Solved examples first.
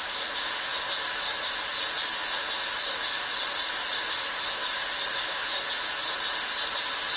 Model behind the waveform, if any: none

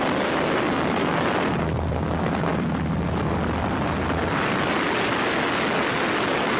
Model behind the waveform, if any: none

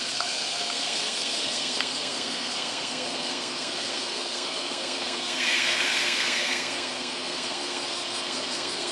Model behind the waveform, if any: codec, SNAC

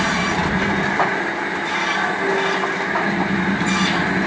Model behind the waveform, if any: none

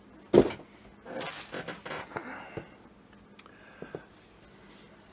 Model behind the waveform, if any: none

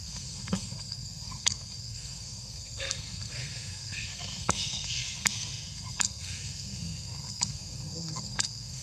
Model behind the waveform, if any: codec, SNAC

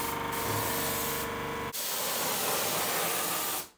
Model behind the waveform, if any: none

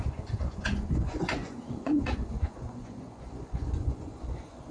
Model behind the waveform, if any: vocoder, Vocos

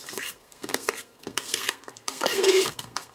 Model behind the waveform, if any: codec, SNAC